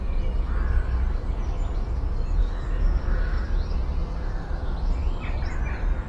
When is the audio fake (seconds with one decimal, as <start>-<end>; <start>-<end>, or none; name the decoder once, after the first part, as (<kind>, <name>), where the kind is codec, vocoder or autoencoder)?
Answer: 2.4-3.5 (codec, DAC)

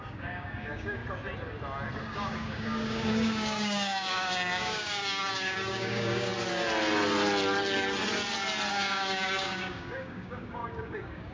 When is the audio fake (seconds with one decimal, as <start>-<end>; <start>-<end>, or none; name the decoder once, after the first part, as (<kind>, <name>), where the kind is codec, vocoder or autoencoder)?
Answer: 0.0-1.0 (codec, DAC); 2.0-6.3; 8.7-11.3

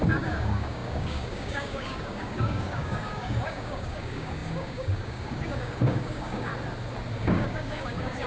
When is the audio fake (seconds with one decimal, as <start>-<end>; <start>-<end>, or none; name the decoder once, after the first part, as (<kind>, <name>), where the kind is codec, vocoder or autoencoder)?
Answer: 0.0-6.5 (codec, DAC); 7.2-8.3